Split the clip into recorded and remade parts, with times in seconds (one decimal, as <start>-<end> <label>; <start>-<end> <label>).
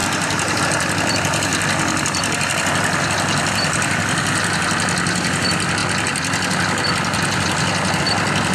0.0-0.6 remade; 0.6-8.5 recorded